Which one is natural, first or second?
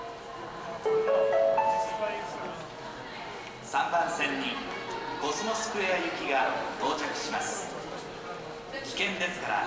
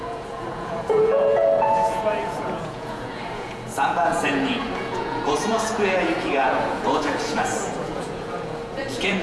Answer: first